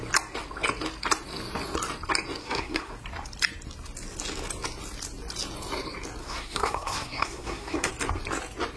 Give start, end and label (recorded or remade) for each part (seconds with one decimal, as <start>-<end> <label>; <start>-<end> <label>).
0.0-2.4 recorded; 2.4-2.9 remade; 2.9-6.2 recorded; 6.2-7.9 remade; 7.9-8.8 recorded